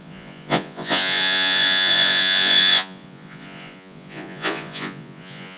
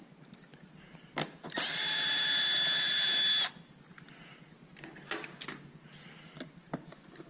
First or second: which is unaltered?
second